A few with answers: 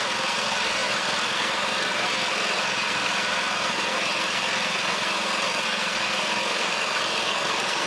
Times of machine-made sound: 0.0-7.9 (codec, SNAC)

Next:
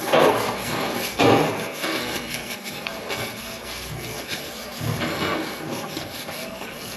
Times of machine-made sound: 0.0-7.0 (codec, SNAC)

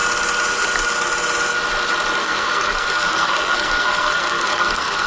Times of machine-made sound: 2.2-5.1 (codec, SNAC)

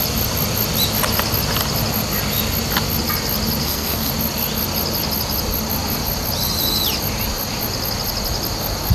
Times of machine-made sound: 3.6-4.1 (codec, SNAC)